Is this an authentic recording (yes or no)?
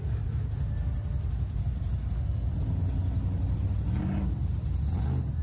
yes